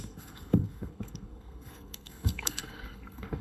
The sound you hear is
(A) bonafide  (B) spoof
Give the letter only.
B